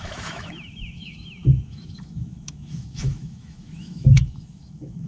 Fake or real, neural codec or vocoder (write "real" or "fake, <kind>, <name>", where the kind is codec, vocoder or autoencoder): fake, autoencoder, DAC-VAE